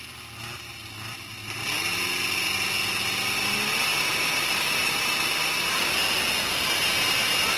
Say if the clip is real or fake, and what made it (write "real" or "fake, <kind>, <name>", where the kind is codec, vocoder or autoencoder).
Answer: real